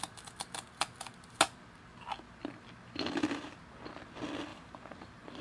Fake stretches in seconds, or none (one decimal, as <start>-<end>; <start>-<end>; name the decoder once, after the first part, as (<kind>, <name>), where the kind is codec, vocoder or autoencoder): 4.5-5.4 (vocoder, BigVGAN v2)